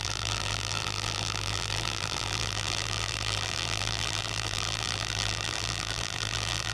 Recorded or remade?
remade